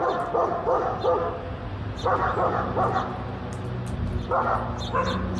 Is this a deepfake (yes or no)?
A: no